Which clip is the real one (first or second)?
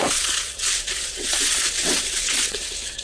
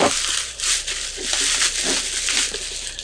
second